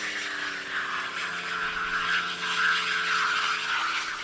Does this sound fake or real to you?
real